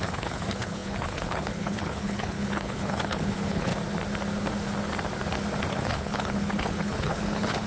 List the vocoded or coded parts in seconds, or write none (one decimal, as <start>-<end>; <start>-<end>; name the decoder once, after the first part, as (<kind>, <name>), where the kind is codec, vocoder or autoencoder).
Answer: 0.0-3.7 (codec, HILCodec); 5.7-7.7